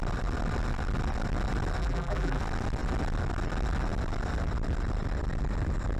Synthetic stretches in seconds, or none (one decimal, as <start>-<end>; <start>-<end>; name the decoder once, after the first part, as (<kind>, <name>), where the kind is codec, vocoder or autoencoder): 1.8-2.4 (vocoder, BigVGAN v2)